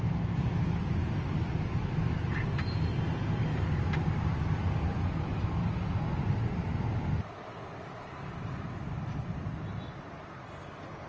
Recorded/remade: recorded